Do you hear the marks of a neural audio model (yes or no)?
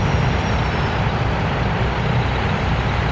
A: no